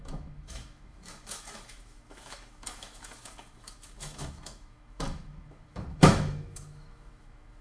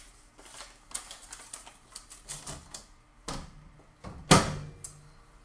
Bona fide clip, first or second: second